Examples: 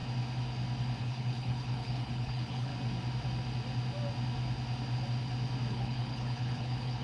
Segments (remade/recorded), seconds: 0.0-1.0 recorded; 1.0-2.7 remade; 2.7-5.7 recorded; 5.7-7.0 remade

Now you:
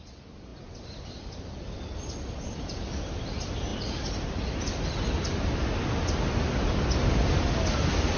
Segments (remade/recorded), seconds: 0.0-8.2 recorded